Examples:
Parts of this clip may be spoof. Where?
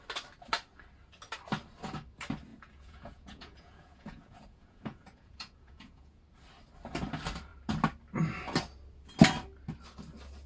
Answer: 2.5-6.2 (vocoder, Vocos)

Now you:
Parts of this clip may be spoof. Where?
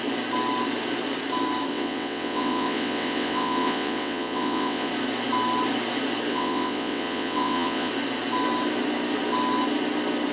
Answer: 1.7-4.9 (vocoder, WaveNeXt); 6.3-7.9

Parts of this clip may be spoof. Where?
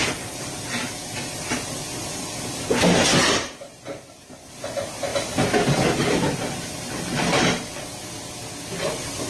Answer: none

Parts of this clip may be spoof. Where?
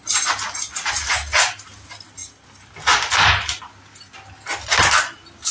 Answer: none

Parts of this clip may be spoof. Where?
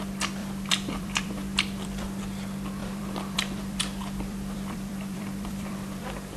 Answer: 0.4-2.2 (vocoder, BigVGAN v2); 2.8-6.4